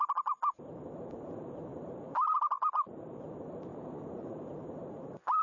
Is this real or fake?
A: fake